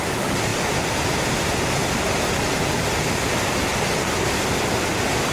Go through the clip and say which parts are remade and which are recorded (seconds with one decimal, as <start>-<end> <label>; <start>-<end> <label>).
0.0-5.3 recorded